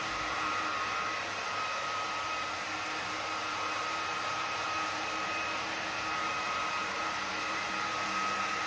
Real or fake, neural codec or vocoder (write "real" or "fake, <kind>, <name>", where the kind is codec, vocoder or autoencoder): fake, vocoder, BigVGAN v2